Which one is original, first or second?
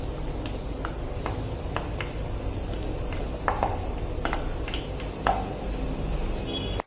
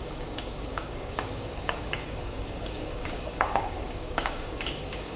first